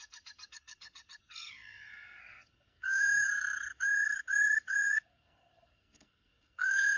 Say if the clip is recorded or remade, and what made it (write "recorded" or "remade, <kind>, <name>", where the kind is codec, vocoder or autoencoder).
remade, codec, SNAC